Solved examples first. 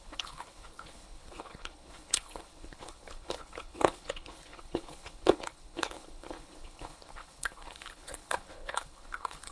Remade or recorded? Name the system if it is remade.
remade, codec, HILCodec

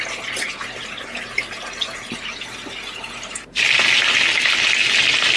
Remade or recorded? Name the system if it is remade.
recorded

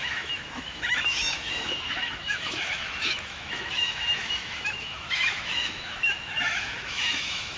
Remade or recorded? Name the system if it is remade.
remade, autoencoder, DAC-VAE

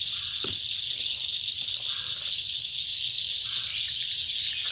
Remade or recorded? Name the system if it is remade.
recorded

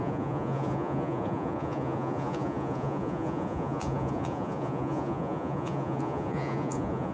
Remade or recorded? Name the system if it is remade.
remade, vocoder, Vocos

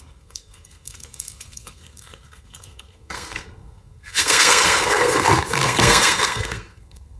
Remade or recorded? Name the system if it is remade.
remade, codec, SNAC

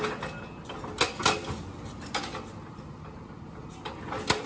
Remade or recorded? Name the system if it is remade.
recorded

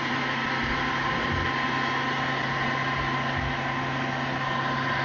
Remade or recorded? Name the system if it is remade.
recorded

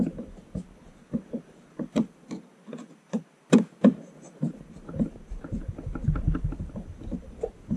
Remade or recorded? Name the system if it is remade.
recorded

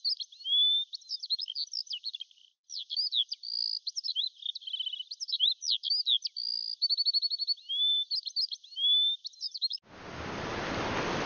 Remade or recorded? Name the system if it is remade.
recorded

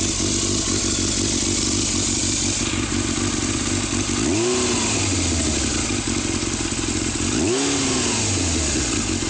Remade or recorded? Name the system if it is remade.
recorded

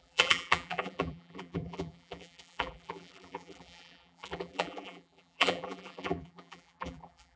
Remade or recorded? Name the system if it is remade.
remade, vocoder, BigVGAN v2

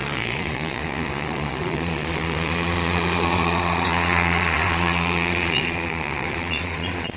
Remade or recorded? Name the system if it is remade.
remade, vocoder, Vocos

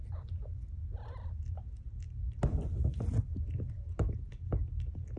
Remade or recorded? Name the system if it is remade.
recorded